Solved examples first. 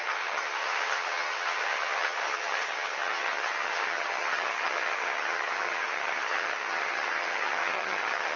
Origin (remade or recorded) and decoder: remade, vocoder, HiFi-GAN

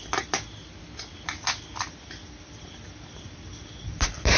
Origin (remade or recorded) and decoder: recorded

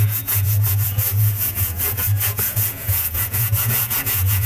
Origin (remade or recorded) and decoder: remade, vocoder, Vocos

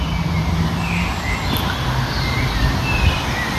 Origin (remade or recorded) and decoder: recorded